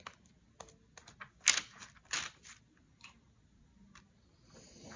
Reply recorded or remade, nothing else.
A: recorded